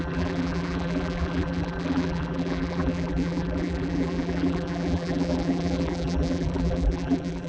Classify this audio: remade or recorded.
remade